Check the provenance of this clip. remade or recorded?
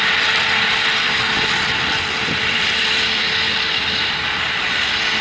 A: remade